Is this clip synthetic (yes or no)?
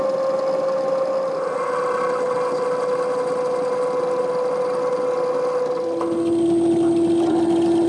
no